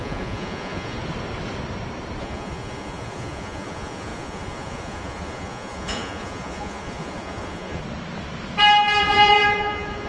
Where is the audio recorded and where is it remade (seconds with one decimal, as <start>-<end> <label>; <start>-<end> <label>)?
0.0-1.0 remade; 1.0-2.2 recorded; 2.2-7.8 remade; 7.8-9.0 recorded; 9.0-10.1 remade